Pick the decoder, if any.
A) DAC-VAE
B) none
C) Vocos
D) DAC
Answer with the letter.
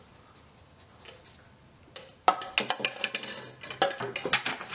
B